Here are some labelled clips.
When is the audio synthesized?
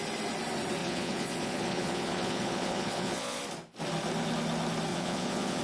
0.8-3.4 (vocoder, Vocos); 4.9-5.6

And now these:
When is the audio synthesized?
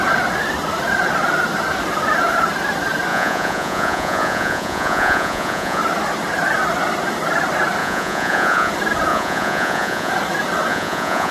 3.1-5.8 (vocoder, Vocos); 7.8-8.7; 9.1-10.1; 10.7-11.3